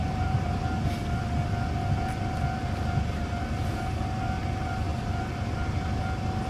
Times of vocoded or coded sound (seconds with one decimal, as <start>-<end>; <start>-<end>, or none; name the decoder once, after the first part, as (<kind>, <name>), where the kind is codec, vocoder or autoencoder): 0.0-0.6 (vocoder, BigVGAN v2)